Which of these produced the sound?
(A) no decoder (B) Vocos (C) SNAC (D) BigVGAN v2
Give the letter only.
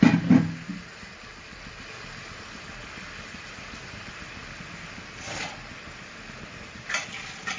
A